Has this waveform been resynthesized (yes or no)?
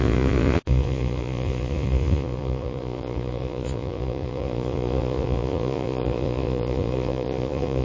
yes